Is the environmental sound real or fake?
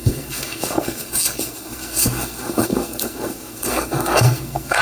fake